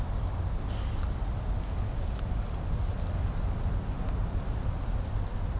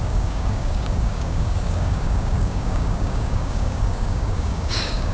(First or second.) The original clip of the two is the first